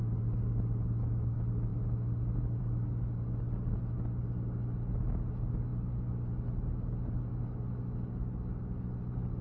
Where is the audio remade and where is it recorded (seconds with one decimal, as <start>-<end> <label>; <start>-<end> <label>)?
0.0-9.4 recorded